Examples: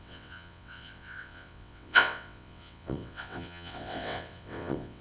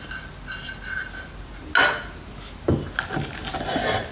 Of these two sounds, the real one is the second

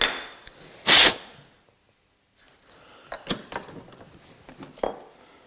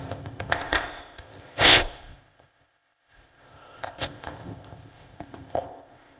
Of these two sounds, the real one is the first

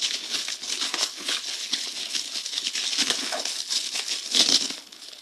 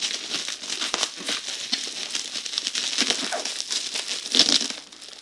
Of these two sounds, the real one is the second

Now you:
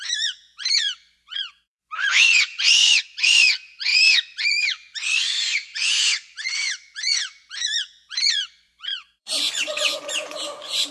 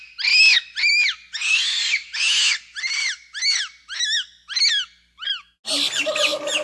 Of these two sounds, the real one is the second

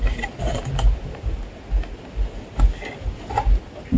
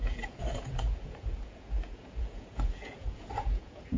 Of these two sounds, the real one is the first